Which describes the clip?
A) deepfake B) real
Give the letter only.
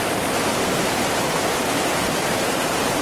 A